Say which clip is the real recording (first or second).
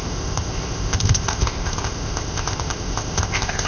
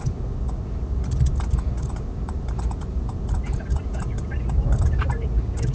second